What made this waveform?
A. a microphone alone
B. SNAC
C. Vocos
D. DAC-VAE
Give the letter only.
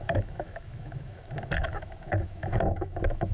D